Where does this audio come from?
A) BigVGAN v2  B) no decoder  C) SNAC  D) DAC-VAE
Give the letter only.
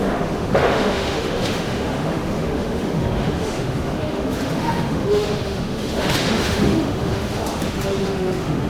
D